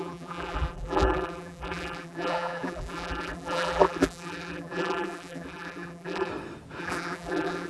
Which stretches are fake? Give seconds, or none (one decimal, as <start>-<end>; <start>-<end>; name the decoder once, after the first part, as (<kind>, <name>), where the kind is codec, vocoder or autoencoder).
0.0-6.3 (vocoder, BigVGAN v2); 6.8-7.7